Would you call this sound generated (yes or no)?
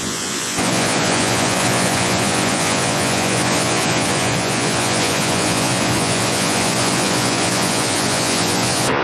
yes